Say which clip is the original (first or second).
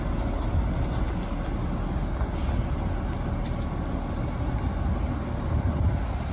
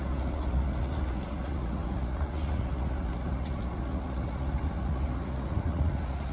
first